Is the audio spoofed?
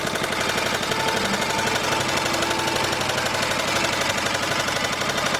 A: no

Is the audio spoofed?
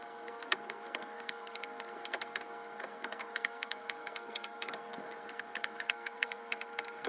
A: yes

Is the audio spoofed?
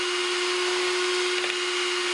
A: no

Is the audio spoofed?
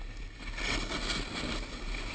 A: no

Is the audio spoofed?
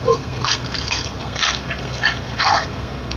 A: yes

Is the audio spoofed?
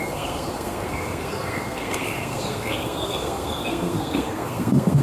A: yes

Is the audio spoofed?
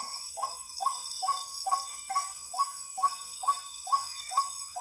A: yes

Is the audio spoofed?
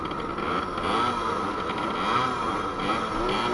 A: no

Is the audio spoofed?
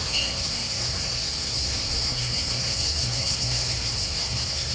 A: yes